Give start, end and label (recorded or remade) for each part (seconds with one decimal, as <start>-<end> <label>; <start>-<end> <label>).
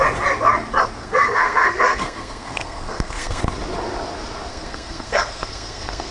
0.0-1.0 recorded; 1.0-3.4 remade; 3.4-4.5 recorded; 4.5-6.1 remade